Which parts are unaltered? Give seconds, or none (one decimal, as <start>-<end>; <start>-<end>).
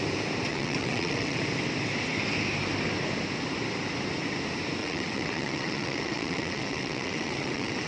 0.0-0.5; 1.4-4.8